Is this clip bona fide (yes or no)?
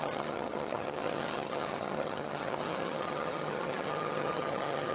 no